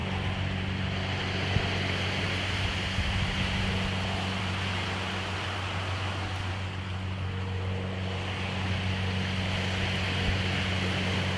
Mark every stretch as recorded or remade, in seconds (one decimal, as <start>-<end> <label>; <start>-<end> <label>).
0.0-11.4 recorded